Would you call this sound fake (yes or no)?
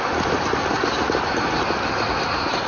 no